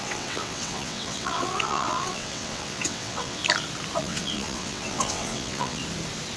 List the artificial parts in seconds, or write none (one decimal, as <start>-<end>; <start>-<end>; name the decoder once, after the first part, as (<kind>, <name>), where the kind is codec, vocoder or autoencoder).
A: 0.0-3.4 (vocoder, WaveNeXt); 4.0-5.8